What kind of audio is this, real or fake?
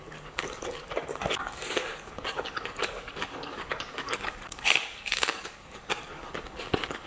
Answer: fake